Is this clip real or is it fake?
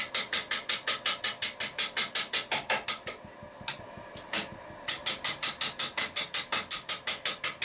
real